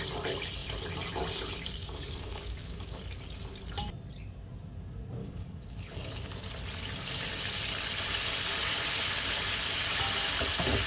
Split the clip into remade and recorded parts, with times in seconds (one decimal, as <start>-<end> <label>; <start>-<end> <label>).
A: 0.0-1.8 recorded; 1.8-3.0 remade; 3.0-5.2 recorded; 5.2-6.0 remade; 6.0-10.9 recorded